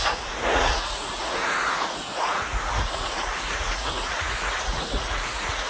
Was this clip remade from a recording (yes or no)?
yes